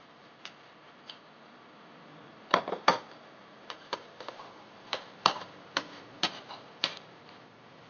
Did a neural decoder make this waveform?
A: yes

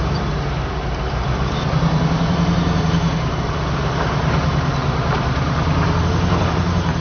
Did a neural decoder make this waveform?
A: yes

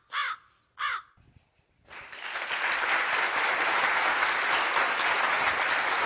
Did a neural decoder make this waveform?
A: no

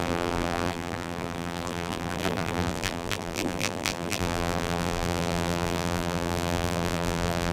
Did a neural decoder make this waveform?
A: yes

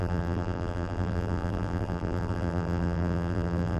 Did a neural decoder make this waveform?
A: yes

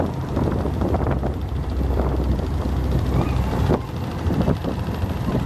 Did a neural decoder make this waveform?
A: yes